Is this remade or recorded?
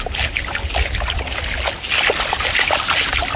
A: recorded